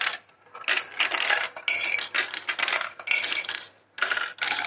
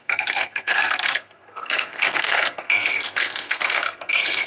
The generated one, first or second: second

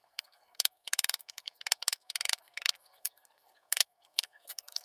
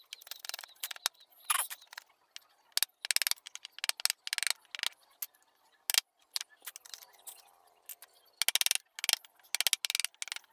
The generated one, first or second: first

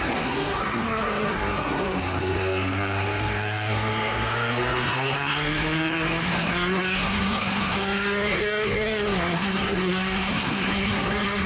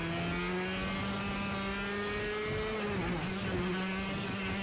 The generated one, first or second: first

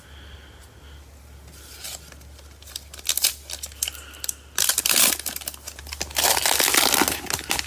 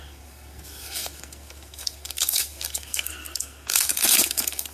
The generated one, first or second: second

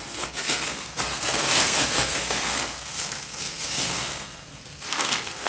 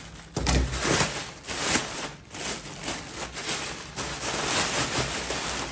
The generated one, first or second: first